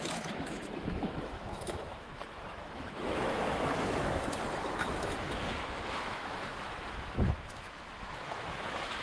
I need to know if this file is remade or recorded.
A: remade